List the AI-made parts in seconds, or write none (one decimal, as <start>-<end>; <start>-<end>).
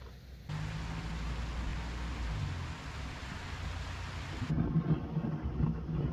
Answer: none